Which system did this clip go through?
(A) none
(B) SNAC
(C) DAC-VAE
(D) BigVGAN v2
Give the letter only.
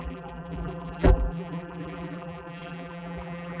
D